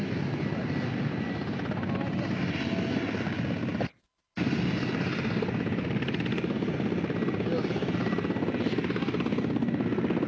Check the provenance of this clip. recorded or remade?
recorded